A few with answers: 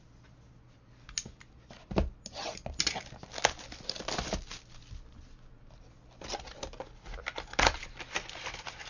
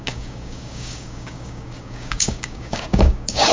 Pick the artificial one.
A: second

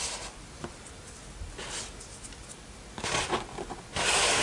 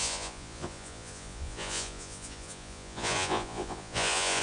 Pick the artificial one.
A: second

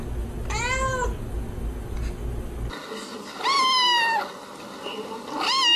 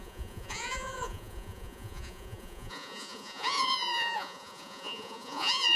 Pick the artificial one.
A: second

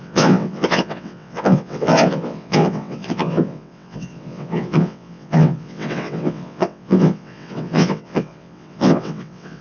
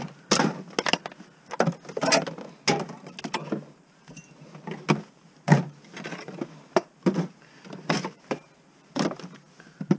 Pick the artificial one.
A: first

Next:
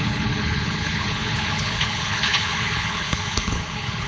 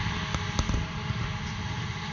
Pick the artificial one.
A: first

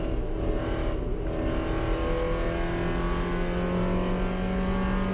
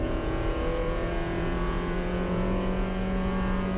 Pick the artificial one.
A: second